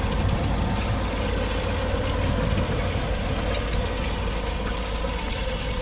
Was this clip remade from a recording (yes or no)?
no